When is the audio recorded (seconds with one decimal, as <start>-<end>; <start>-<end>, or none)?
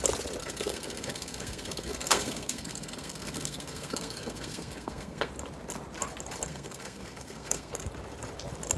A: 0.0-0.4; 5.3-6.5; 7.9-8.8